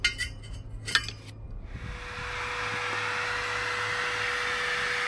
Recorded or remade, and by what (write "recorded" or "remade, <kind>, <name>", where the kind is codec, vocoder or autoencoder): recorded